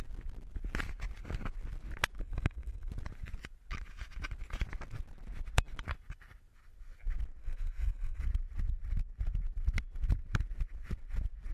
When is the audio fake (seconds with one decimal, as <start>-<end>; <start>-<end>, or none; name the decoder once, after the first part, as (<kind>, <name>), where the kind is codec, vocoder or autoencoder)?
2.2-2.9 (codec, SNAC); 7.4-8.2